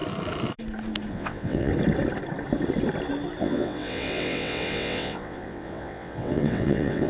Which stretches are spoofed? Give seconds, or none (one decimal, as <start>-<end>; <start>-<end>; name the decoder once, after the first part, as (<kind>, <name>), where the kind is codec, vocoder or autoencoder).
1.1-1.7 (vocoder, WaveNeXt); 3.4-7.1